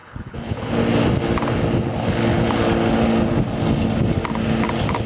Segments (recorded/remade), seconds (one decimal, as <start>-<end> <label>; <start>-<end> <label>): 0.0-0.7 remade; 0.7-5.1 recorded